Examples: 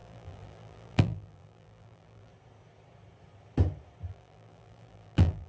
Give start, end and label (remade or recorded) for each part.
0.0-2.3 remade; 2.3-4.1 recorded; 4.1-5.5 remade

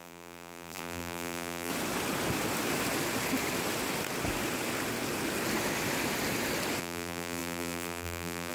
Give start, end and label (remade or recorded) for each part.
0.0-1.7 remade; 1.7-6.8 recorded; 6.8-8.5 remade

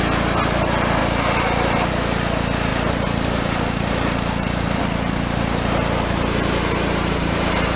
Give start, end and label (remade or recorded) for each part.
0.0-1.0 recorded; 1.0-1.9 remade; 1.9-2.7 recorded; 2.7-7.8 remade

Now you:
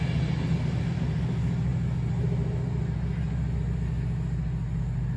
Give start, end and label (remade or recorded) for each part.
0.0-5.2 recorded

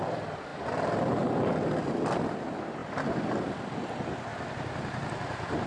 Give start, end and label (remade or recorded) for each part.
0.0-5.7 recorded